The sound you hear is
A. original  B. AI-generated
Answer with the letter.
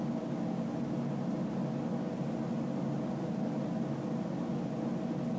A